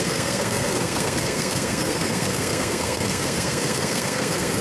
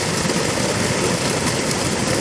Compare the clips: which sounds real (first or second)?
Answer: second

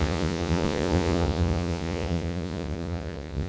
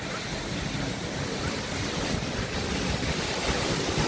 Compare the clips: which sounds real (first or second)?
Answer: second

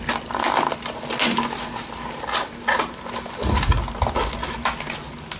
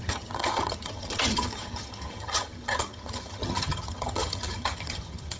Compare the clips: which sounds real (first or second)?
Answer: first